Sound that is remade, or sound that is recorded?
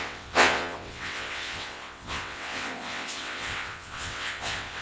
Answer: remade